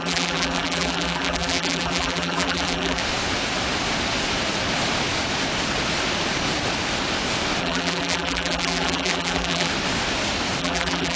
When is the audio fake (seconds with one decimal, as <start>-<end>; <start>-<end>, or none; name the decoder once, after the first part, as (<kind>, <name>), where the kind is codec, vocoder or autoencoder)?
0.0-3.0 (vocoder, BigVGAN v2); 7.6-9.7; 10.6-11.2